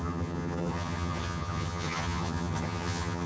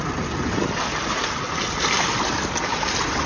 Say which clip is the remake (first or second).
first